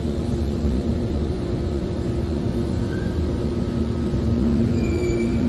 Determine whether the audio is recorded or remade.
remade